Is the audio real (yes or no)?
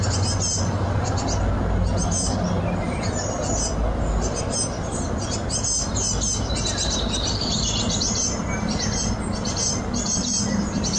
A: yes